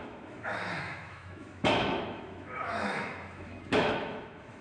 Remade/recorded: remade